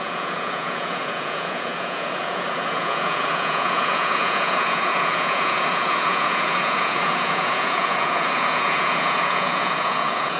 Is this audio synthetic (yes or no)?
yes